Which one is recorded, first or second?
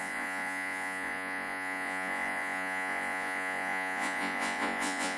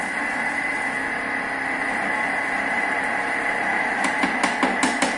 second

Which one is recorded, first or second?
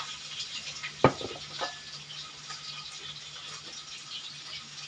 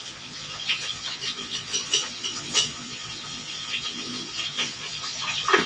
first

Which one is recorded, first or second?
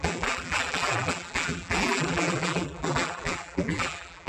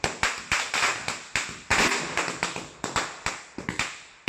second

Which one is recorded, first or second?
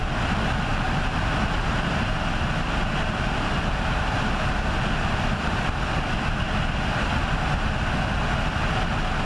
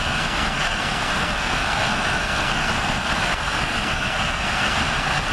first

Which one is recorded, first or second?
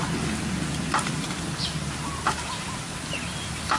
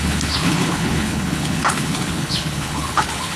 first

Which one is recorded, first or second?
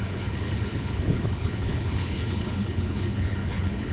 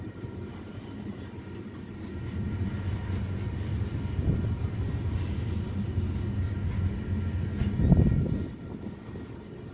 second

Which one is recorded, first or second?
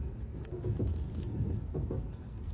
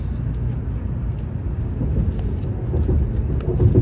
second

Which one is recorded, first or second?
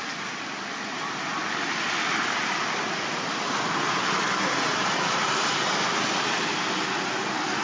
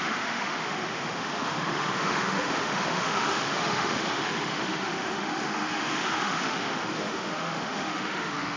first